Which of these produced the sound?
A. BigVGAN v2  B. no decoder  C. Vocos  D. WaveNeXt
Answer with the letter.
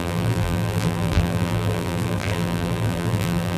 A